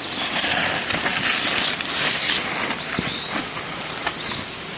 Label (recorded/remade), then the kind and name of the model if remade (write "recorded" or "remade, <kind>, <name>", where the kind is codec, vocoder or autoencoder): recorded